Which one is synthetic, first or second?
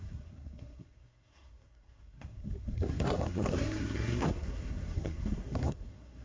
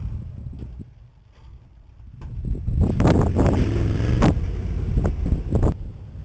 first